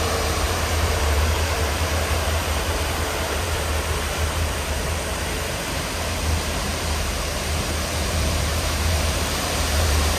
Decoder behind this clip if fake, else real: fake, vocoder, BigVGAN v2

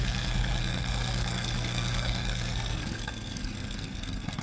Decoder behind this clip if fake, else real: fake, codec, SNAC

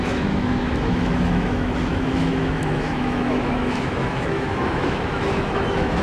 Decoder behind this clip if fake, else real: fake, autoencoder, DAC-VAE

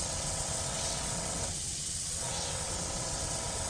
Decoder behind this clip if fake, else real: fake, vocoder, WaveNeXt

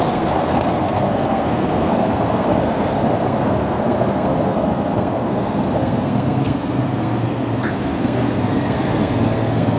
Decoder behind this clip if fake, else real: fake, codec, SNAC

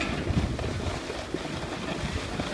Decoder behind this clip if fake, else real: real